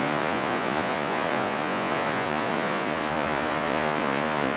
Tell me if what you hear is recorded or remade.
remade